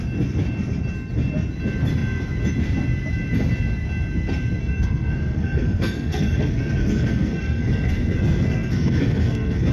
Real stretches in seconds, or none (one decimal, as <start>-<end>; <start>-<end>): 0.0-4.6